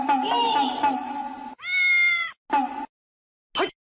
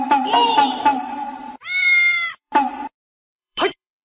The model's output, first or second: second